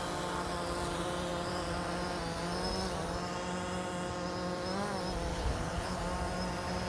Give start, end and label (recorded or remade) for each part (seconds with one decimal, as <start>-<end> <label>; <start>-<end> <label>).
0.0-5.3 recorded; 5.3-6.0 remade; 6.0-6.9 recorded